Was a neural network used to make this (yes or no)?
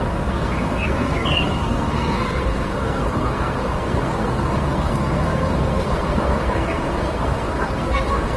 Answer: yes